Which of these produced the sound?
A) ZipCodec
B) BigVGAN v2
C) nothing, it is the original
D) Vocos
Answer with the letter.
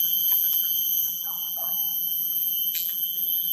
B